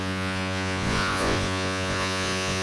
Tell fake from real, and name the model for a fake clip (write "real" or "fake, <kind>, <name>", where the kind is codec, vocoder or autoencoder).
fake, vocoder, Vocos